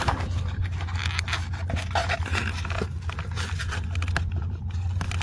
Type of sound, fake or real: real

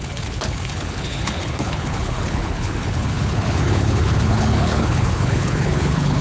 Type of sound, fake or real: fake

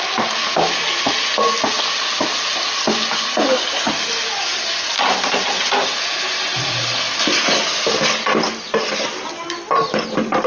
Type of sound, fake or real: real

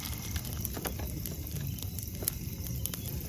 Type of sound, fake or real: real